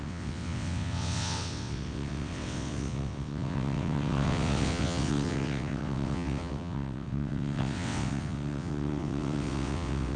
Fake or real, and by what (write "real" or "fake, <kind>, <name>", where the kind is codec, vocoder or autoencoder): fake, vocoder, WaveNeXt